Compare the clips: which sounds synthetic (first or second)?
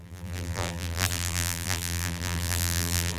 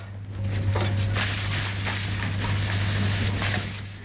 first